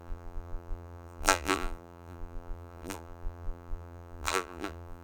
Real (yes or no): no